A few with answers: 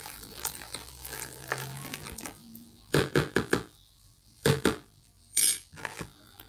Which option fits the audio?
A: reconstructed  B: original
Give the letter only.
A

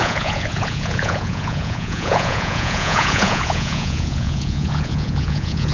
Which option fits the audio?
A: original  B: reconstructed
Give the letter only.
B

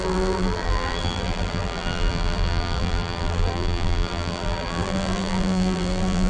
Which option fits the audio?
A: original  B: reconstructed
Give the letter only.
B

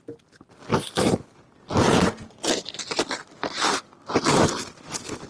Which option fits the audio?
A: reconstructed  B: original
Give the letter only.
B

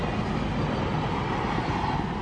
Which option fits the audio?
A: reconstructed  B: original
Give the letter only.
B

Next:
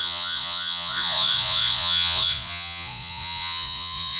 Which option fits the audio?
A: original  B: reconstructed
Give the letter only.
B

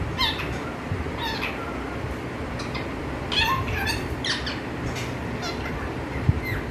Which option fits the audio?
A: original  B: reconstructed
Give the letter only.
A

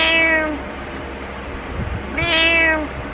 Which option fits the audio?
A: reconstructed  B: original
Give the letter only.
B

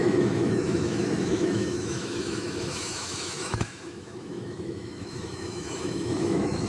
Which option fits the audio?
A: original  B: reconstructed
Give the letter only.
B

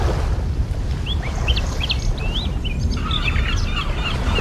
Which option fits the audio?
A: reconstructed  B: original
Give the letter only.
A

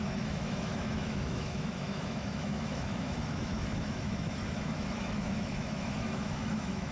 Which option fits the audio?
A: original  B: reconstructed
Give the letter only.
B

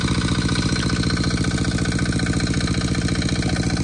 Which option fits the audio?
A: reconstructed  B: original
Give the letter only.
B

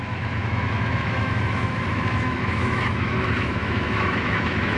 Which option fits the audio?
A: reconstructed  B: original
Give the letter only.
A